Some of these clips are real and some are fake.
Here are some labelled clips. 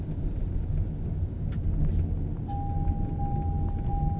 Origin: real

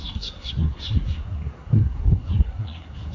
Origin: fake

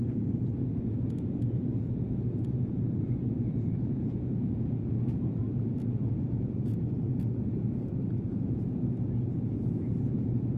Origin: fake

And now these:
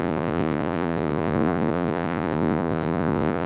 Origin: fake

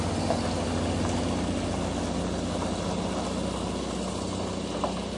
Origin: real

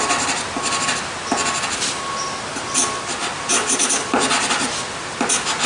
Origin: real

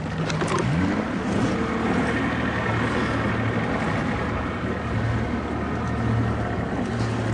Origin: real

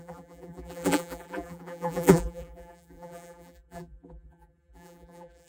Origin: fake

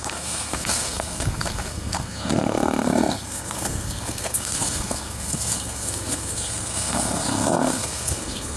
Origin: fake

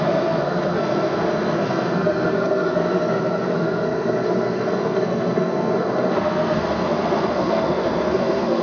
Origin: fake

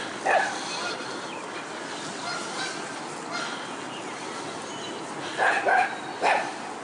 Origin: real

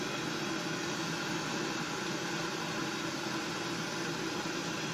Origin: real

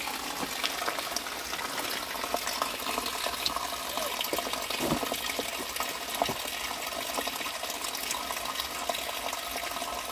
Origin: real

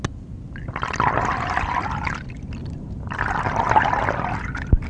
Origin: real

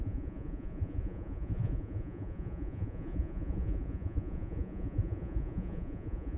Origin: fake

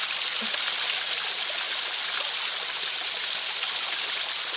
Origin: fake